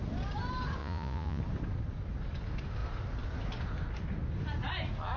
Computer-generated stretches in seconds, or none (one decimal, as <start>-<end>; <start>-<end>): 0.8-1.4